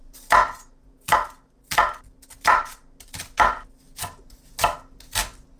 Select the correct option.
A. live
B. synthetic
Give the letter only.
A